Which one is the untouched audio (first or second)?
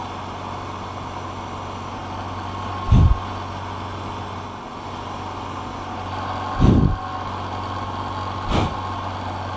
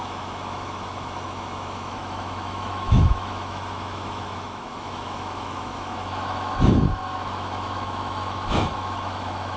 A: first